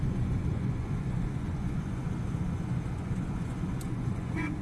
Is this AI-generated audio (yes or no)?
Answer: yes